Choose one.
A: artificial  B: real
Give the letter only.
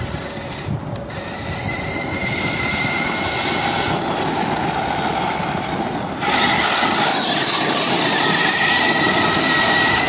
B